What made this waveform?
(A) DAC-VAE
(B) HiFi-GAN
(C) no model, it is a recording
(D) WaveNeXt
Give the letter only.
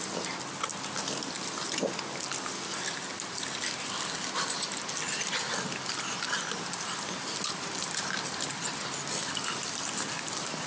C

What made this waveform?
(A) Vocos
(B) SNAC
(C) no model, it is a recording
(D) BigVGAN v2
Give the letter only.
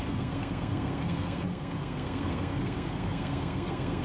B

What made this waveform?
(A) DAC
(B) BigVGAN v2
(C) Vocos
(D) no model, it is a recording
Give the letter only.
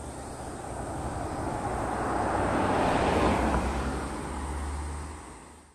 D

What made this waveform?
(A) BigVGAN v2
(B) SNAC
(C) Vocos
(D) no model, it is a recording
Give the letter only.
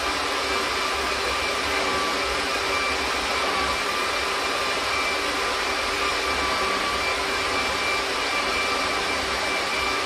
D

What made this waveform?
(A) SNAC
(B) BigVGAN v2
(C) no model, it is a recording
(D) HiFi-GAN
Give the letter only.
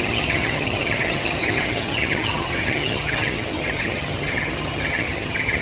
D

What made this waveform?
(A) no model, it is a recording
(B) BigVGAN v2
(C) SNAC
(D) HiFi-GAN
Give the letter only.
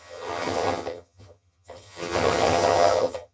D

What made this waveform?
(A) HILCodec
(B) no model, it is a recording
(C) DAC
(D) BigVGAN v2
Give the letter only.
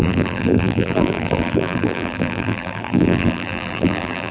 D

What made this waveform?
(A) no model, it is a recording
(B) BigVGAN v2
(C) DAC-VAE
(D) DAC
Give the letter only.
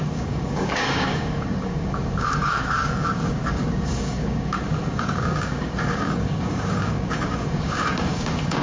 D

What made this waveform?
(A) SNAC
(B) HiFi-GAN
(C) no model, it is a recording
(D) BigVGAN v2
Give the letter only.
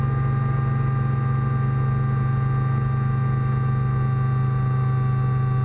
C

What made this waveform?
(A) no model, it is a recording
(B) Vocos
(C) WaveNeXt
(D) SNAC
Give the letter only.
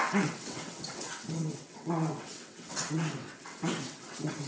C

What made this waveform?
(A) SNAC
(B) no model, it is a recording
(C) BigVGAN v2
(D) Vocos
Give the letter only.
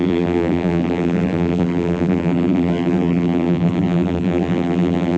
C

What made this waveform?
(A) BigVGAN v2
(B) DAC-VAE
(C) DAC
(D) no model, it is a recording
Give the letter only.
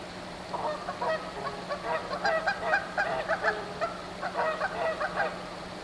D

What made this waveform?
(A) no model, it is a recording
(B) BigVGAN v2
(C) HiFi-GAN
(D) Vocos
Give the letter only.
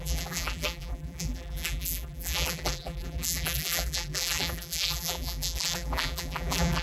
B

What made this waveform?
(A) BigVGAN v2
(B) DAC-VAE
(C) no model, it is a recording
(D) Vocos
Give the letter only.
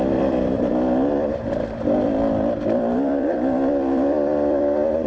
A